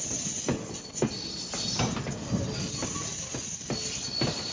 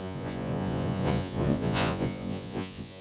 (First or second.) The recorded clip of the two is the first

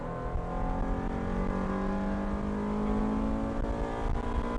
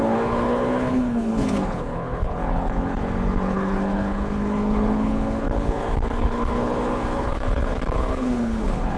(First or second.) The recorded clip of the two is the first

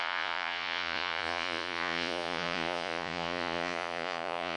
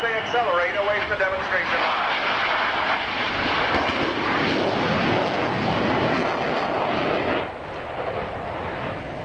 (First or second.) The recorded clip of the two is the second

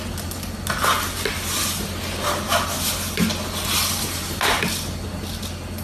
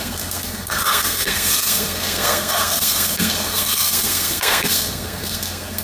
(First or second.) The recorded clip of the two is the first